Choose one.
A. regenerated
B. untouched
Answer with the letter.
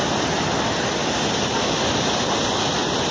B